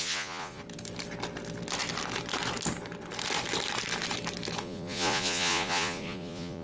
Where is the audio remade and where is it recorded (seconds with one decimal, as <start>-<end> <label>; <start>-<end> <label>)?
0.0-0.6 remade; 0.6-4.6 recorded; 4.6-6.6 remade